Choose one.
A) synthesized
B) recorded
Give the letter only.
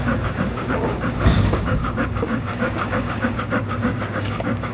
A